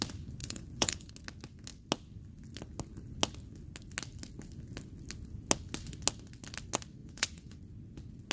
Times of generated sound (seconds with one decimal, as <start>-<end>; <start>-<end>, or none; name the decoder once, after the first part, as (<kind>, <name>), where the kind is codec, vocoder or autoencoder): 0.4-1.1 (vocoder, Vocos); 7.0-7.6